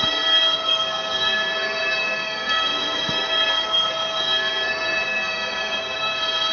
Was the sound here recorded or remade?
remade